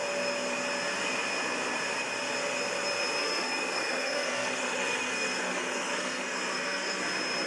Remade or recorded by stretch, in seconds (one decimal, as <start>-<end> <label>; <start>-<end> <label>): 0.0-3.2 recorded; 3.2-7.0 remade; 7.0-7.5 recorded